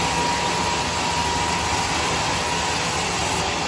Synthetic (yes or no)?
no